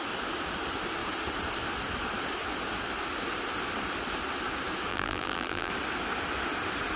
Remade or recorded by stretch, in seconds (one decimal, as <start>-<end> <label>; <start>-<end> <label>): 0.0-4.9 recorded; 4.9-5.7 remade; 5.7-7.0 recorded